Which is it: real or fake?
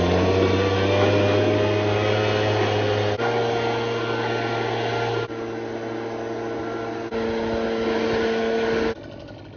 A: real